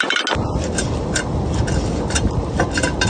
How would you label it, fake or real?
real